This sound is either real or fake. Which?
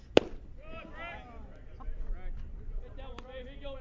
real